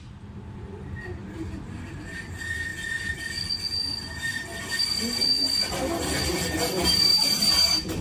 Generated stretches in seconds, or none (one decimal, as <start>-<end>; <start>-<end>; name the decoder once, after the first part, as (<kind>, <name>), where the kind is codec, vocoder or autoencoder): none